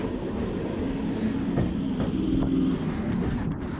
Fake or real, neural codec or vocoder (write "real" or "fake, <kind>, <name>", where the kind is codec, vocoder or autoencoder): real